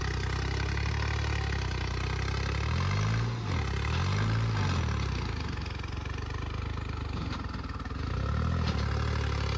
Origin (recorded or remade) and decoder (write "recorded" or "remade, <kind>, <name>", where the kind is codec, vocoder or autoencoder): recorded